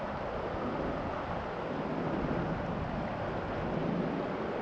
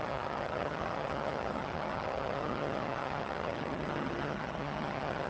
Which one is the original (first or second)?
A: first